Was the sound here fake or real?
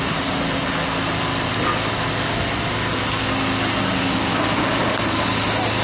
real